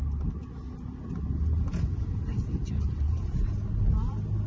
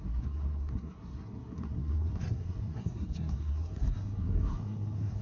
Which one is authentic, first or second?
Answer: first